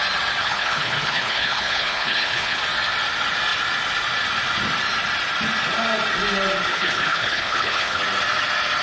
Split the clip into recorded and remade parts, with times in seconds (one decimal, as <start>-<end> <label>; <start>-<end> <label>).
0.0-0.4 recorded; 0.4-2.6 remade; 2.6-6.7 recorded; 6.7-8.0 remade; 8.0-8.8 recorded